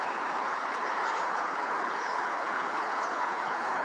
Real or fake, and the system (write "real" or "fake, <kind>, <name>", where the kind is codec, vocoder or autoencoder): fake, codec, HILCodec